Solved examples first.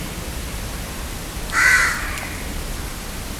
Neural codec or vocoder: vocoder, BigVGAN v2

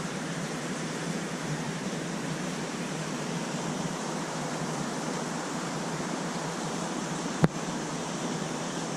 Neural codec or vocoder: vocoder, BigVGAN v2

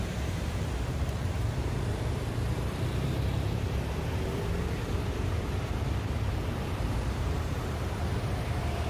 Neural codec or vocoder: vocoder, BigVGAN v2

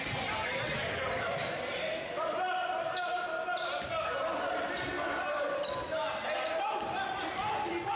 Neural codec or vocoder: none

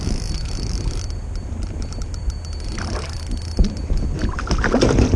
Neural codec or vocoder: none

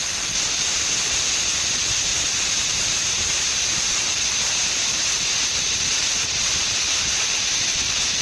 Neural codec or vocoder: vocoder, BigVGAN v2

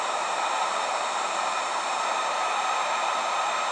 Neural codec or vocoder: vocoder, BigVGAN v2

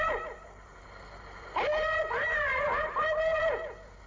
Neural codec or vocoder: none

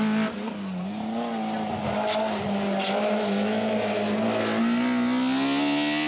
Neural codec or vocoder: none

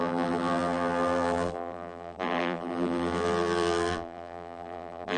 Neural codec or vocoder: vocoder, BigVGAN v2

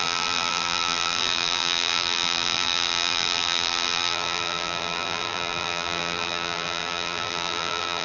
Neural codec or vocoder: vocoder, BigVGAN v2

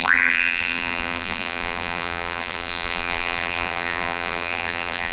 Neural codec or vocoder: vocoder, BigVGAN v2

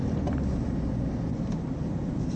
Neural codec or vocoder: vocoder, BigVGAN v2